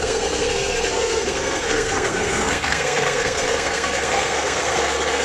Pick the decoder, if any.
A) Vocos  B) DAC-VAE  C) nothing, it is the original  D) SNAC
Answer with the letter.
D